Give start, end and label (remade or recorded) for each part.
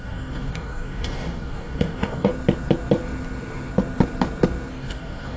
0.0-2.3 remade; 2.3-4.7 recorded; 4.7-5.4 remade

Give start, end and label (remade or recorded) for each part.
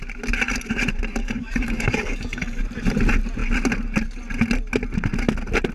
0.0-1.2 recorded; 1.2-2.6 remade; 2.6-5.7 recorded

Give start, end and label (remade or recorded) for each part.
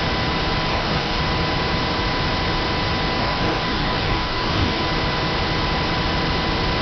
0.0-0.7 recorded; 0.7-1.2 remade; 1.2-3.2 recorded; 3.2-4.8 remade; 4.8-6.8 recorded